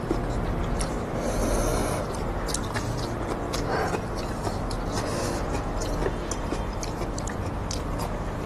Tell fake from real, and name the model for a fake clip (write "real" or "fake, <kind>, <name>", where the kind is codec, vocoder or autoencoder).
real